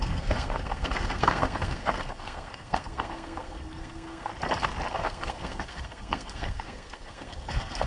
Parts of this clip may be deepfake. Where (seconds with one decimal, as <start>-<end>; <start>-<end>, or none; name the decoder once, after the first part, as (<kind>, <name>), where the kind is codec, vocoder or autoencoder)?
0.0-4.3 (codec, SNAC); 4.9-7.9